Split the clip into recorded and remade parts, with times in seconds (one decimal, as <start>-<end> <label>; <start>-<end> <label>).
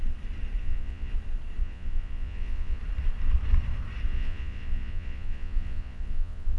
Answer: 0.0-0.6 recorded; 0.6-1.1 remade; 1.1-1.6 recorded; 1.6-2.8 remade; 2.8-4.1 recorded; 4.1-6.6 remade